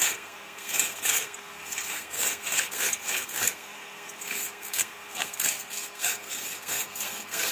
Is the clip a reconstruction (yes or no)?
yes